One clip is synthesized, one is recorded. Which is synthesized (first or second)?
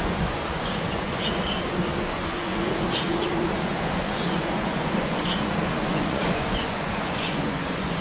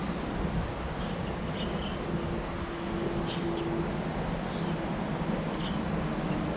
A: first